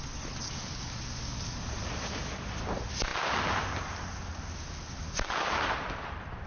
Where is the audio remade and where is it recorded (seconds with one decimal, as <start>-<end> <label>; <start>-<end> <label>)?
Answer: 0.0-6.5 recorded